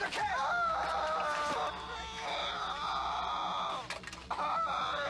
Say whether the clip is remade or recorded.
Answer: recorded